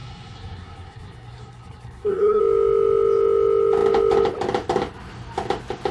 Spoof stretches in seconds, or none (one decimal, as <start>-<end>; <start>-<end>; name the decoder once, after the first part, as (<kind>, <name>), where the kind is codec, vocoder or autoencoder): 0.0-2.4 (codec, SNAC)